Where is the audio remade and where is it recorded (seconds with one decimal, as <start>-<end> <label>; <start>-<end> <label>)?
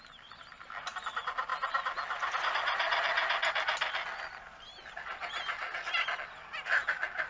0.0-7.3 recorded